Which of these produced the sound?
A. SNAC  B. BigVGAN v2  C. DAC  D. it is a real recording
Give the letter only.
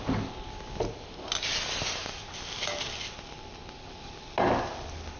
D